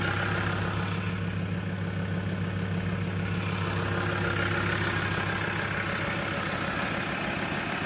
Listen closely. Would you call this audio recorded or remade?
recorded